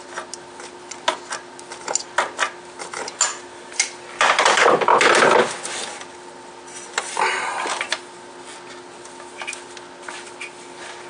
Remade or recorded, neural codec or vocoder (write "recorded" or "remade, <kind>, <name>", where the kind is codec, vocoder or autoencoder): recorded